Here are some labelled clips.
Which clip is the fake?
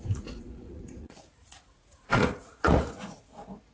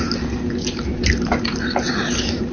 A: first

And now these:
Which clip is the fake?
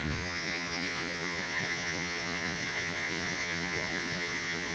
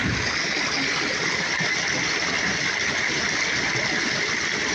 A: first